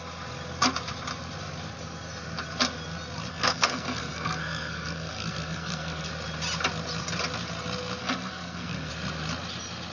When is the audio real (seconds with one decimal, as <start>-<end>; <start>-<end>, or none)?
0.0-3.3; 6.1-8.0; 8.9-9.9